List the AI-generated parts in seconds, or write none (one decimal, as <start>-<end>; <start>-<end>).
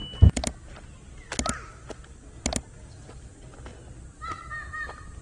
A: none